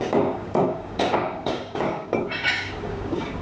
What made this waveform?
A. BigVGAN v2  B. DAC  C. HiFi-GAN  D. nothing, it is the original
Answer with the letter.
B